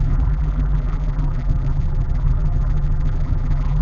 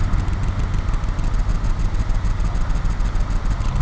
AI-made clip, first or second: first